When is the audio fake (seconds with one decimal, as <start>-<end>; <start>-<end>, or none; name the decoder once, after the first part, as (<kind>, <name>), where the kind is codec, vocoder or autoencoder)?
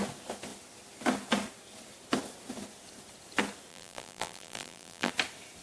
3.7-5.1 (vocoder, BigVGAN v2)